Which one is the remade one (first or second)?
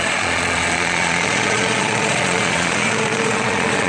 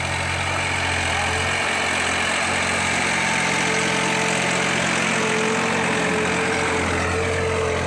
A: first